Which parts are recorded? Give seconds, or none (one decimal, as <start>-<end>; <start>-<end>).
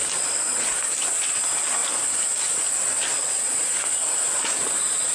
0.0-5.1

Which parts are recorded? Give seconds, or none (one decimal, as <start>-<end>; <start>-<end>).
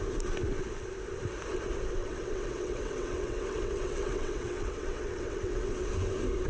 0.0-2.0; 5.9-6.5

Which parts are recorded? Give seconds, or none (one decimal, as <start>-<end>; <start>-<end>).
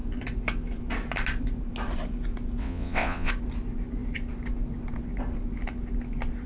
0.0-2.6; 3.3-6.5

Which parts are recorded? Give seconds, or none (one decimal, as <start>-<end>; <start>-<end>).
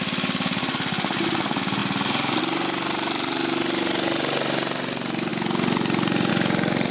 0.0-6.9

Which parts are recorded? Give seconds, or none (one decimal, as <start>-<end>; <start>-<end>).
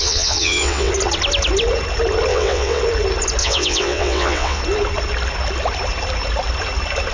0.9-2.3; 2.8-3.4; 4.6-7.1